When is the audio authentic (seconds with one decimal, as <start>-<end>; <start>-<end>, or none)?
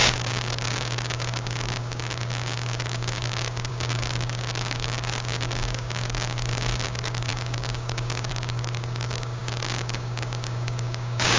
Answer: none